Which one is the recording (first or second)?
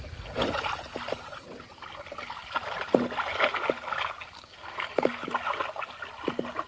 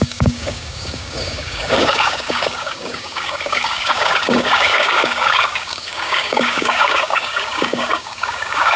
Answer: first